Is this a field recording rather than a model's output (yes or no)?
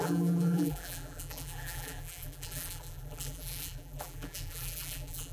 no